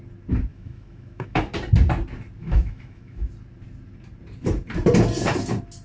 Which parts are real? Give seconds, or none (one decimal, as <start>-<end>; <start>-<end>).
0.0-0.5; 1.4-2.4; 3.3-5.8